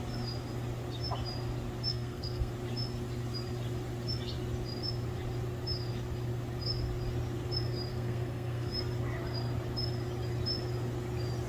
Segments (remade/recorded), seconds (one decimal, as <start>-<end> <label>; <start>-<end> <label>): 0.0-1.9 recorded; 1.9-2.5 remade; 2.5-7.9 recorded; 7.9-8.7 remade; 8.7-11.5 recorded